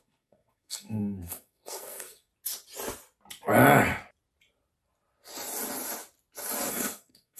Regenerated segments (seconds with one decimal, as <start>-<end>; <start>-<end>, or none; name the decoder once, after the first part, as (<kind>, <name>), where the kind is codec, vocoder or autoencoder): 0.0-2.3 (codec, SNAC); 6.7-7.4